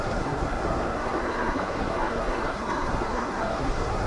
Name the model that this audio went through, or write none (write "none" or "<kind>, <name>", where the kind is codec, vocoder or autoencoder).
codec, SNAC